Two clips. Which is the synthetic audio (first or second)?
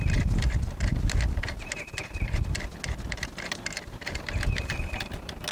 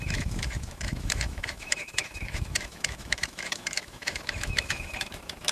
second